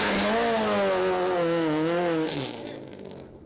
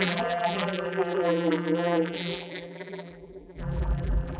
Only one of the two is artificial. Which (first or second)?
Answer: second